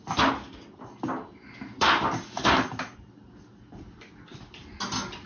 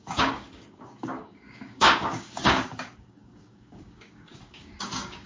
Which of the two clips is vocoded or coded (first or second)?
second